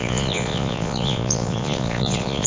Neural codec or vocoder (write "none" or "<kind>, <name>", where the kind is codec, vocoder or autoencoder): vocoder, Vocos